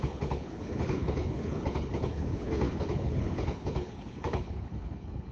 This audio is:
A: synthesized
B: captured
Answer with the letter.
A